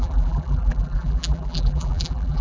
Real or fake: fake